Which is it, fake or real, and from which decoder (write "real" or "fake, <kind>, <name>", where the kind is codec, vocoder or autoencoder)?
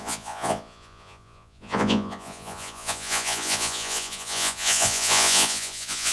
fake, vocoder, Vocos